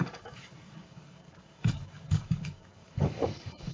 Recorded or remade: remade